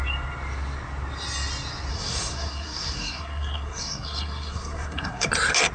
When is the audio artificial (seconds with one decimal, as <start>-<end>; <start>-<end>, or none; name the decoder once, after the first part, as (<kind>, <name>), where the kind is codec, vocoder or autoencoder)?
1.9-5.3 (codec, SNAC)